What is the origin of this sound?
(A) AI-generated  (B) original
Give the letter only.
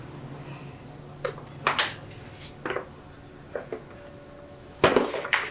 B